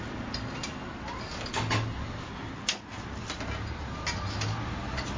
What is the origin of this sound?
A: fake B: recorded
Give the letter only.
B